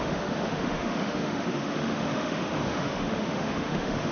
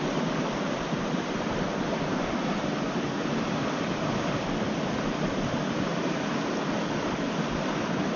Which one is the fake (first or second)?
first